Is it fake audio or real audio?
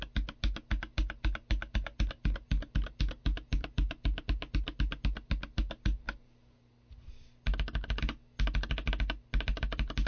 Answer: real